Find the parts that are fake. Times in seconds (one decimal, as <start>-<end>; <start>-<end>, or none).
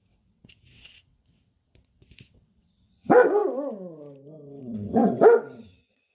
0.0-3.4; 4.6-6.1